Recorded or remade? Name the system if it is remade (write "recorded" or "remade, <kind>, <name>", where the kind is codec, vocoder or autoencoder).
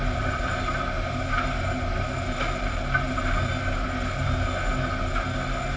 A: recorded